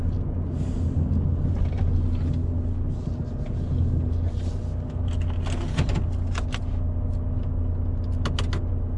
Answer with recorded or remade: recorded